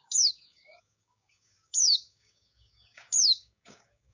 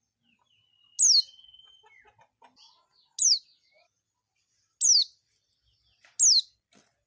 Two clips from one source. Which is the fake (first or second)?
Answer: first